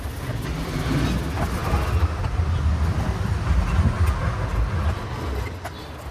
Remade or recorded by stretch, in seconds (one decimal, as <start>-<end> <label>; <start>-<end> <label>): 0.0-6.1 recorded